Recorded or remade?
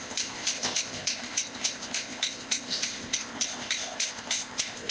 remade